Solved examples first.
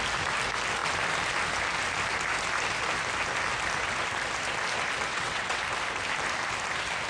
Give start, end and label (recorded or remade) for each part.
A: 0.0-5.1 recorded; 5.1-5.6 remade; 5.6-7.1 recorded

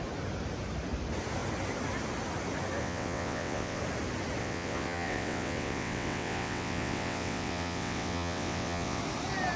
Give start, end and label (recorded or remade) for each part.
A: 0.0-2.8 recorded; 2.8-3.8 remade; 3.8-4.4 recorded; 4.4-9.0 remade; 9.0-9.6 recorded

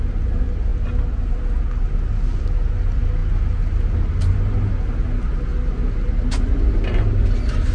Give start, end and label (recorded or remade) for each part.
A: 0.0-7.7 recorded

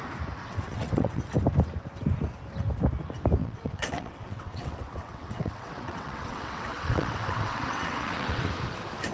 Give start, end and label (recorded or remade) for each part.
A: 0.0-0.4 recorded; 0.4-1.2 remade; 1.2-3.4 recorded; 3.4-8.5 remade; 8.5-9.1 recorded

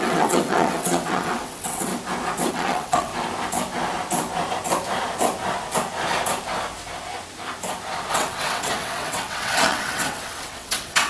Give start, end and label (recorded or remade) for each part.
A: 0.0-1.9 remade; 1.9-2.5 recorded; 2.5-3.1 remade; 3.1-8.1 recorded; 8.1-11.1 remade

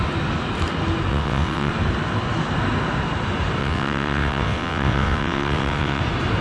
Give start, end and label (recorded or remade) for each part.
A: 0.0-1.1 recorded; 1.1-1.7 remade; 1.7-3.6 recorded; 3.6-6.0 remade; 6.0-6.4 recorded

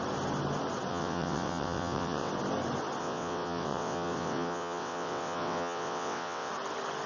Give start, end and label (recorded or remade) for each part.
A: 0.0-0.9 recorded; 0.9-2.3 remade; 2.3-3.0 recorded; 3.0-6.5 remade; 6.5-7.1 recorded

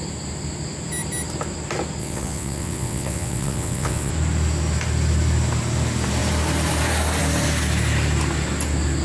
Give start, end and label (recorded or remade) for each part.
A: 0.0-2.0 recorded; 2.0-4.1 remade; 4.1-9.0 recorded